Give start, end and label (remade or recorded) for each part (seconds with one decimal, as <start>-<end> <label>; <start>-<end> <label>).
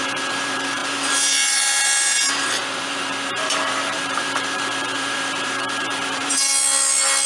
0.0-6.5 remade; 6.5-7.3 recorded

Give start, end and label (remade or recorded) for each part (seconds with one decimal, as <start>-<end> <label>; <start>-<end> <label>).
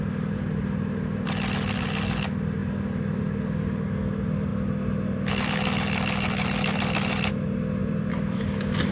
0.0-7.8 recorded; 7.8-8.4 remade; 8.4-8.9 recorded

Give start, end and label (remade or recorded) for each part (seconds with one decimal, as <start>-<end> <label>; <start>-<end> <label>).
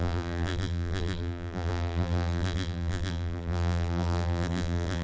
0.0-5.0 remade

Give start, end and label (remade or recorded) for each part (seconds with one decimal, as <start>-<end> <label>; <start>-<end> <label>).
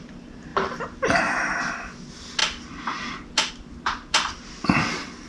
0.0-0.5 recorded; 0.5-1.6 remade; 1.6-5.3 recorded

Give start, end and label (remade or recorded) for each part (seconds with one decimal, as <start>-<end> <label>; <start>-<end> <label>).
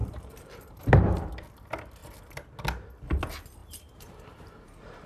0.0-1.3 remade; 1.3-3.6 recorded; 3.6-5.1 remade